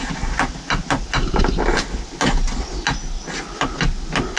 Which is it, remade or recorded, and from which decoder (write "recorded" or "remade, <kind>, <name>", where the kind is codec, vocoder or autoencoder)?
recorded